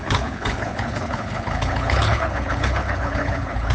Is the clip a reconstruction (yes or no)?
yes